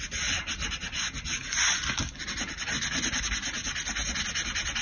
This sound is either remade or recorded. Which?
recorded